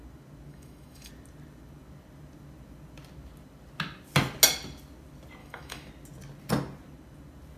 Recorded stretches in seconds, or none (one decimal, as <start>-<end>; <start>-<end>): 0.0-0.5; 1.1-5.4; 5.9-7.6